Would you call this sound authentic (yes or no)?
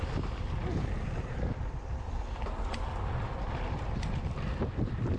no